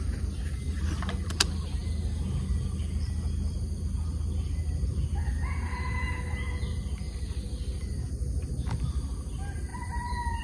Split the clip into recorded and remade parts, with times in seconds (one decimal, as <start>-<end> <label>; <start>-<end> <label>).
0.0-10.4 recorded